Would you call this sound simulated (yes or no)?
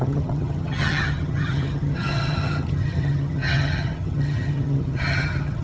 yes